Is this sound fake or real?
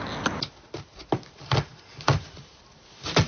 real